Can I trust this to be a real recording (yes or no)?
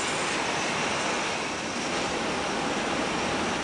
yes